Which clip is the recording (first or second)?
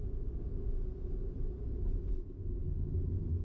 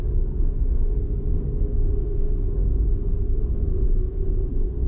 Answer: first